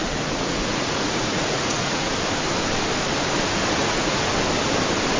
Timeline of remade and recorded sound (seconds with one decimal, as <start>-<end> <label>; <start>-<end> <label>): 0.0-2.1 remade; 2.1-3.8 recorded; 3.8-4.3 remade; 4.3-5.2 recorded